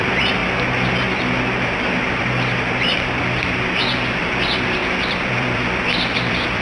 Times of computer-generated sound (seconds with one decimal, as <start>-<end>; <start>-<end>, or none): 0.0-0.4; 1.3-4.8; 5.3-6.6